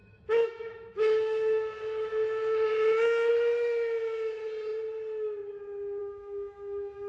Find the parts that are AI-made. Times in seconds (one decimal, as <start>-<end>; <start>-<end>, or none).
0.0-3.3; 6.0-7.1